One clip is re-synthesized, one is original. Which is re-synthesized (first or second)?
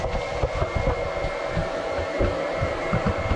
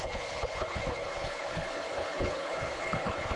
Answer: second